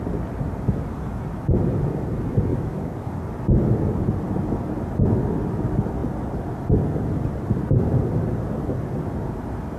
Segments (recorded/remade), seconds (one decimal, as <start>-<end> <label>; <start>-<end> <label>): 0.0-2.5 recorded; 2.5-3.1 remade; 3.1-9.8 recorded